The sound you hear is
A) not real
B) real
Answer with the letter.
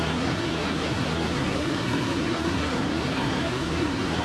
A